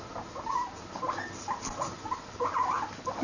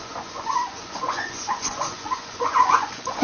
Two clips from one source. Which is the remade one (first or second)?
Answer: second